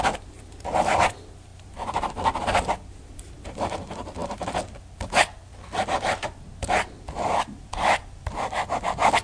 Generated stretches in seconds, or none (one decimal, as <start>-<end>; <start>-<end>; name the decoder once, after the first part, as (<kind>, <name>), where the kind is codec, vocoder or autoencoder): 0.0-4.2 (vocoder, BigVGAN v2); 7.0-9.2